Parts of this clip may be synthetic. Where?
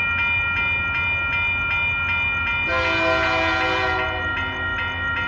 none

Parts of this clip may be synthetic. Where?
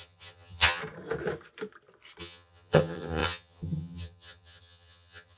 0.0-0.8 (vocoder, HiFi-GAN); 2.2-5.4